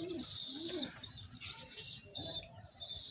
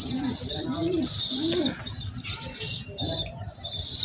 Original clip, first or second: second